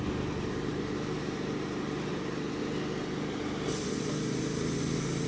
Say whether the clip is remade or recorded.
recorded